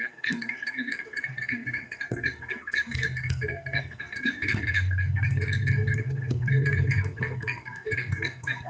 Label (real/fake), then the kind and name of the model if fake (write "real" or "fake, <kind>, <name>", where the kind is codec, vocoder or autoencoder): fake, codec, SNAC